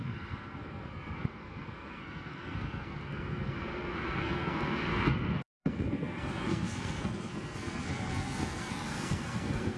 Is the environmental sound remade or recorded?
remade